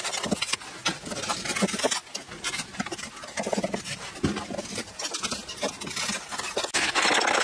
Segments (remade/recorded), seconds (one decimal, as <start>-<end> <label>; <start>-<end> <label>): 0.0-7.4 recorded